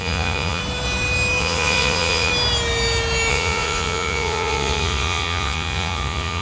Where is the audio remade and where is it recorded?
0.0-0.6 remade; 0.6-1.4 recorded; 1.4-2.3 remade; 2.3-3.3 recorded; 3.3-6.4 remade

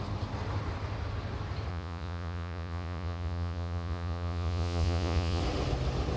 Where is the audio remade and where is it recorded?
0.0-1.7 recorded; 1.7-5.4 remade; 5.4-6.2 recorded

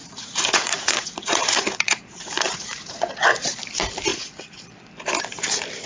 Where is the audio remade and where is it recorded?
0.0-3.5 remade; 3.5-4.1 recorded; 4.1-4.6 remade; 4.6-5.9 recorded